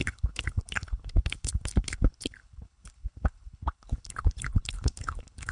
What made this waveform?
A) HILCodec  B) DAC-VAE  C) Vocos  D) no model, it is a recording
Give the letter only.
A